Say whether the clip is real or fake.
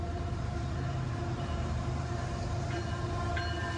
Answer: fake